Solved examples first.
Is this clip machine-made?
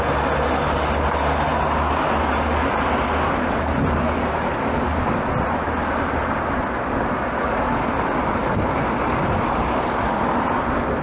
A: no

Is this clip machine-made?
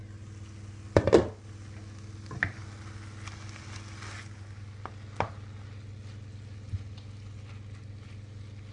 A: no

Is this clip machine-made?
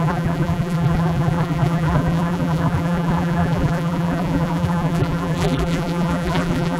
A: yes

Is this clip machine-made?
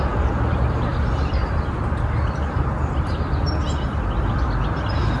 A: no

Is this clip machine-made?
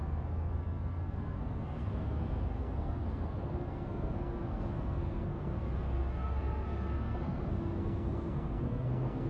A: yes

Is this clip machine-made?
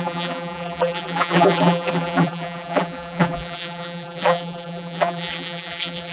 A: yes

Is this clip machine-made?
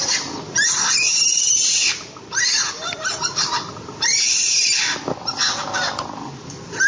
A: no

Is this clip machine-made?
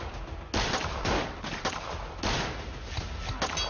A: no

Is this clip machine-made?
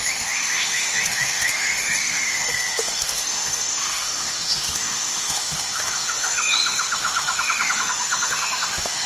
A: yes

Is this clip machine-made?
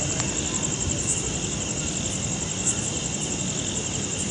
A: no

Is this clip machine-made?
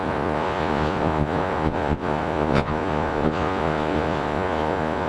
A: yes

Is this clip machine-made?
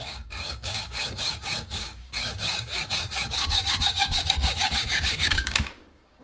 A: yes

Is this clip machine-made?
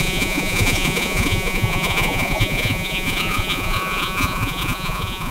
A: yes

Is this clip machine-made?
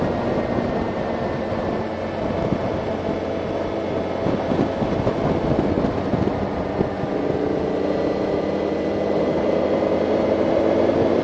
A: no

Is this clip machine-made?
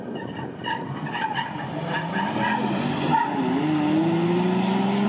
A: no